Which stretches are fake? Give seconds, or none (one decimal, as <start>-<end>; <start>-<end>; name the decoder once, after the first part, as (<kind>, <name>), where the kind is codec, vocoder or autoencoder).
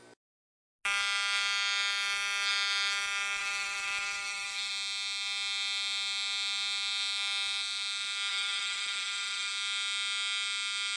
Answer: 3.4-4.7 (vocoder, BigVGAN v2); 8.3-9.5